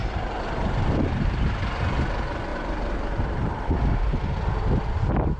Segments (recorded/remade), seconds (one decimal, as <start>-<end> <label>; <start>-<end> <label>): 0.0-1.5 remade; 1.5-2.5 recorded; 2.5-3.7 remade; 3.7-5.4 recorded